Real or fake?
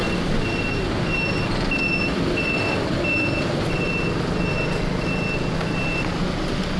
real